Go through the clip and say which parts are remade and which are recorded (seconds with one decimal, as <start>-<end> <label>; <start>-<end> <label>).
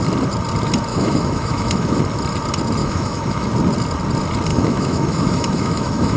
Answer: 0.0-0.9 recorded; 0.9-2.0 remade; 2.0-2.8 recorded; 2.8-3.5 remade; 3.5-4.5 recorded; 4.5-6.2 remade